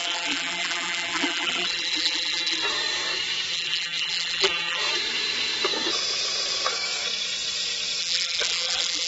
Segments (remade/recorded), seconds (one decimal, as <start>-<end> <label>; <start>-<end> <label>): 0.0-2.6 remade; 2.6-3.5 recorded; 3.5-4.8 remade; 4.8-8.0 recorded; 8.0-9.1 remade